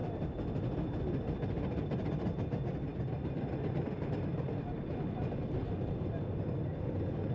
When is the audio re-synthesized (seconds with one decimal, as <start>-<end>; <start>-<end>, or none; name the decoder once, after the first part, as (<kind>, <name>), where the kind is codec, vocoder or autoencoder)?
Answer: none